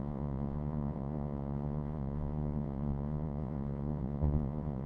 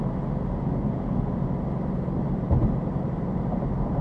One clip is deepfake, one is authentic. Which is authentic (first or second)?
second